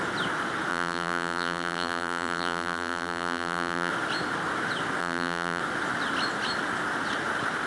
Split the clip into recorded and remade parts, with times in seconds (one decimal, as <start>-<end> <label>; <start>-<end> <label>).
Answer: 0.0-0.7 recorded; 0.7-3.9 remade; 3.9-5.0 recorded; 5.0-5.6 remade; 5.6-7.7 recorded